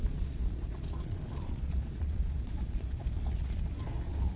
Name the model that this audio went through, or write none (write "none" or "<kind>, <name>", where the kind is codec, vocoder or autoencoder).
vocoder, Vocos